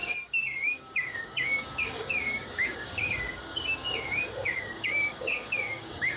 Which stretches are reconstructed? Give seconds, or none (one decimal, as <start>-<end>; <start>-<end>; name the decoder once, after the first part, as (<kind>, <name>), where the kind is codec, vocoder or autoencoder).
0.0-6.2 (codec, DAC)